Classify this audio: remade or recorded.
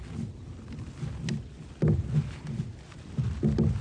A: recorded